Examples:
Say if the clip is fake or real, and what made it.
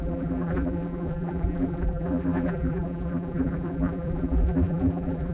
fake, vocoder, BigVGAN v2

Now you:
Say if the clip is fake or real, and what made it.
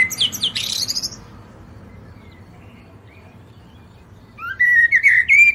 fake, vocoder, BigVGAN v2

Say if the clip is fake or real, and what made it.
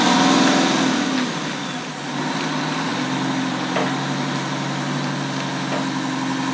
real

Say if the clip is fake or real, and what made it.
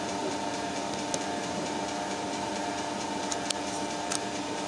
fake, vocoder, BigVGAN v2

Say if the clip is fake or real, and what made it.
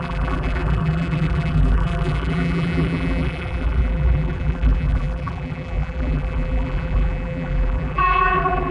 fake, vocoder, BigVGAN v2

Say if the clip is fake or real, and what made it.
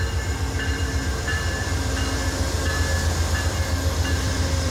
fake, vocoder, BigVGAN v2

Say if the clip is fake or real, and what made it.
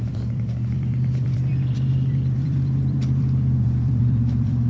fake, vocoder, BigVGAN v2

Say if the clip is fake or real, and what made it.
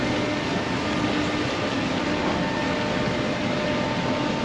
real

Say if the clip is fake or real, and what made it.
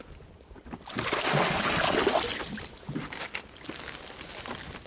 real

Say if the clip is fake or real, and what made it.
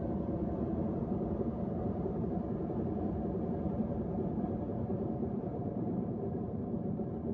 fake, vocoder, BigVGAN v2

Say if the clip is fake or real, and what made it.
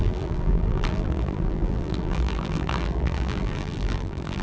fake, vocoder, BigVGAN v2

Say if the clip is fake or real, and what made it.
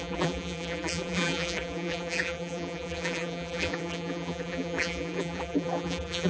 fake, vocoder, BigVGAN v2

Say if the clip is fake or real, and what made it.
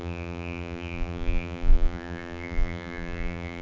fake, vocoder, BigVGAN v2